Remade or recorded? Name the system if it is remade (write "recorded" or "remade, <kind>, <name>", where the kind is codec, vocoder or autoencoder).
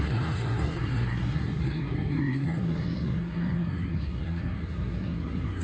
remade, codec, SNAC